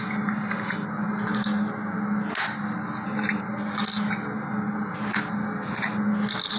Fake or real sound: real